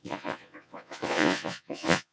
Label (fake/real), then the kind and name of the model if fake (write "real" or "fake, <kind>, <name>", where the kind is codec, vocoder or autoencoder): fake, vocoder, Vocos